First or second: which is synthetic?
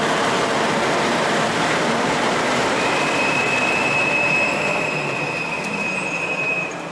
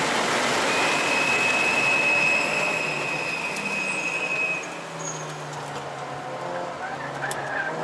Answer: first